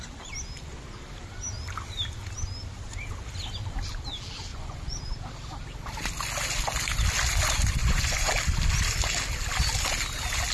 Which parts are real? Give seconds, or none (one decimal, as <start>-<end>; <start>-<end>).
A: 0.0-4.5; 5.0-7.8; 8.3-10.5